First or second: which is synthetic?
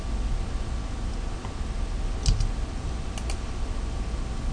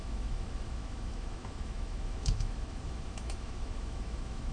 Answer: second